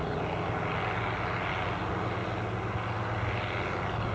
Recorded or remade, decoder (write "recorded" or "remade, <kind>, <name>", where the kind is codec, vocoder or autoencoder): recorded